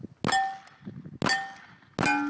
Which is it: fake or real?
real